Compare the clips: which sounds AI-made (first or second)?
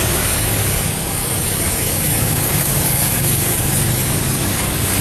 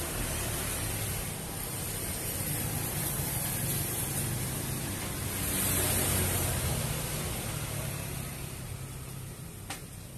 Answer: first